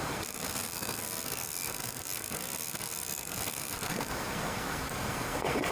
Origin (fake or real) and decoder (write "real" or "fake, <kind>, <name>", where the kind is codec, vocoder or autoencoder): fake, codec, SNAC